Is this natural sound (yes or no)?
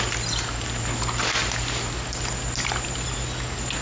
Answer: yes